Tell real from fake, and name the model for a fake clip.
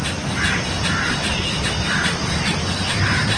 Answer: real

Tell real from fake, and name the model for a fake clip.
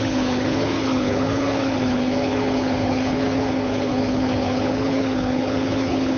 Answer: fake, codec, HILCodec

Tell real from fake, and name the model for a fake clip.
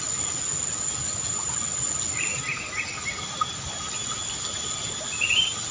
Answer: real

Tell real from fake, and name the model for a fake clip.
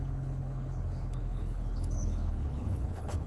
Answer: fake, codec, HILCodec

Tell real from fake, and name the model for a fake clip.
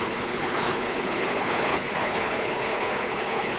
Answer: fake, codec, HILCodec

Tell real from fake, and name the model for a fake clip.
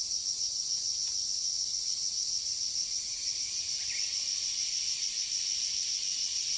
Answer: real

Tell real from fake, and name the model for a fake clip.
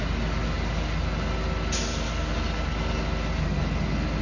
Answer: real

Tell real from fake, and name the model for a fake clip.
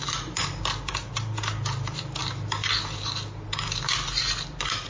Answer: real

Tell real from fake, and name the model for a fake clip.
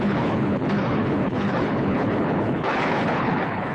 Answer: fake, codec, HILCodec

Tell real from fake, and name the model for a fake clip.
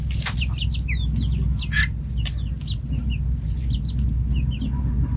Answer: real